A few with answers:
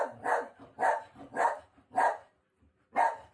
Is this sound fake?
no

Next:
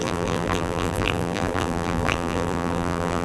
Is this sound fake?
yes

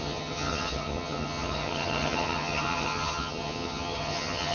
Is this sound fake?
yes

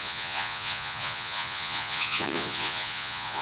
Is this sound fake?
yes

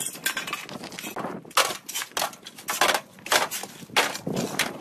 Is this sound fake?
no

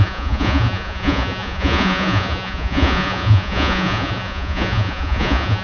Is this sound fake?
yes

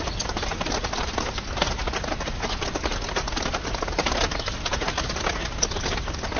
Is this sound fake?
no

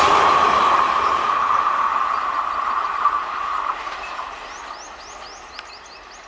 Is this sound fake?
no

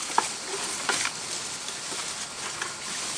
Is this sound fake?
no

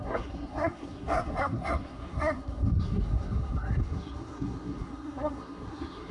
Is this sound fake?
yes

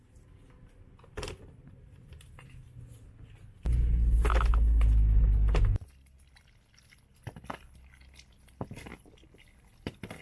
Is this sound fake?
no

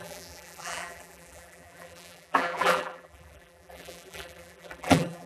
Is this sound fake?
yes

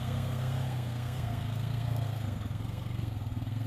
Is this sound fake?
yes